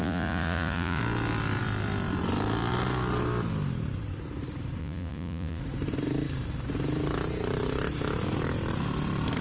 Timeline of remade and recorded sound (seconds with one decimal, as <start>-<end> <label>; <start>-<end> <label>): 0.0-1.0 remade; 1.0-4.8 recorded; 4.8-5.6 remade; 5.6-9.4 recorded

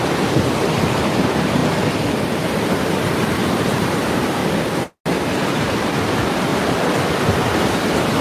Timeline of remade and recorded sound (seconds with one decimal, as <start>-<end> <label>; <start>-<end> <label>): 0.0-1.6 remade; 1.6-2.7 recorded; 2.7-4.4 remade; 4.4-5.2 recorded; 5.2-6.5 remade; 6.5-7.5 recorded; 7.5-8.2 remade